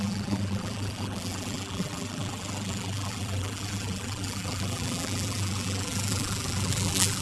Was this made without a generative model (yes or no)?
no